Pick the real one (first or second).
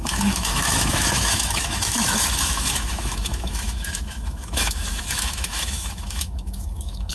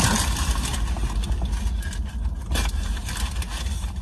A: second